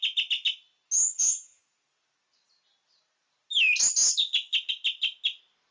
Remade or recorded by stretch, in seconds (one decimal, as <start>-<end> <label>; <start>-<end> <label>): 0.0-1.1 recorded; 1.1-1.6 remade; 1.6-5.7 recorded